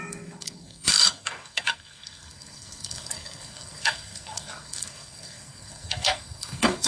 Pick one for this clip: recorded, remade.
remade